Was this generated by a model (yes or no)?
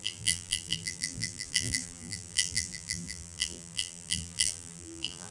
yes